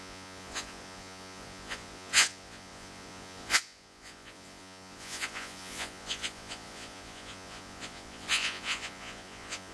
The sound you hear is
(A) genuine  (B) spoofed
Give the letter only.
B